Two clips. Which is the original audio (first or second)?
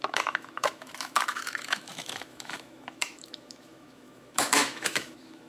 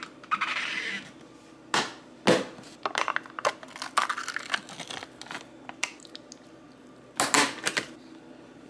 second